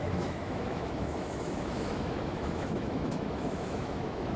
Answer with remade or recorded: remade